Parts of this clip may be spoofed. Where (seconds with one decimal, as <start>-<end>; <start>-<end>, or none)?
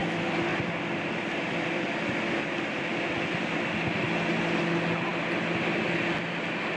0.5-3.8